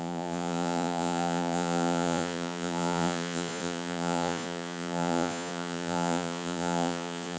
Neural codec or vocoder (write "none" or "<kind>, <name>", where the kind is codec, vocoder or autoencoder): vocoder, Vocos